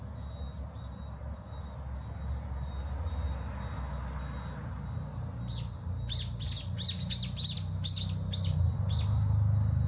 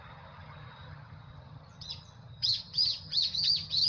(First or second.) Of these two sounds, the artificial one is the second